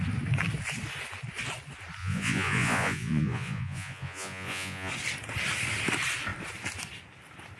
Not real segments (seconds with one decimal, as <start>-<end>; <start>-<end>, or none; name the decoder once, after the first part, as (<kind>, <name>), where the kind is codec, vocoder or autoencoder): 2.0-4.9 (vocoder, Vocos)